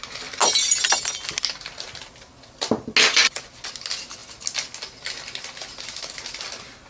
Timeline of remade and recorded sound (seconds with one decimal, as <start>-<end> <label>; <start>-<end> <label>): 0.0-6.9 recorded